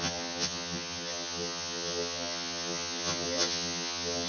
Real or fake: fake